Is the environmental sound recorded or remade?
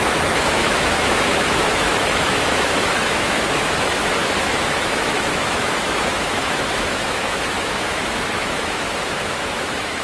remade